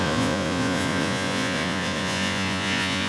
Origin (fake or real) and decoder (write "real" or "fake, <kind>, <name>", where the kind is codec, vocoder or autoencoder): fake, vocoder, Vocos